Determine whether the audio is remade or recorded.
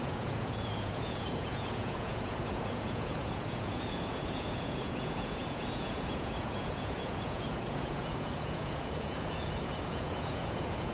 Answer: remade